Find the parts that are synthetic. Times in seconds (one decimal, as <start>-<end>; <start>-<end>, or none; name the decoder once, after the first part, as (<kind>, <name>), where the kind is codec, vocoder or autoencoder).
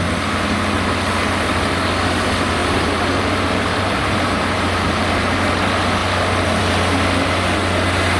2.6-5.5 (vocoder, BigVGAN v2)